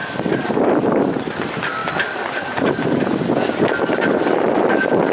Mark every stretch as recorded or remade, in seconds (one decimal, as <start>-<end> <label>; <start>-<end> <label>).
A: 0.0-5.1 recorded